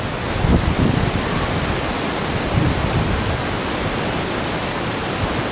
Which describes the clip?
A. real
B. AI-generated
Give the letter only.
A